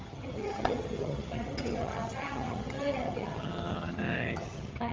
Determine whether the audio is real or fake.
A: fake